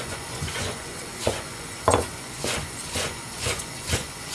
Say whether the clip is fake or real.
fake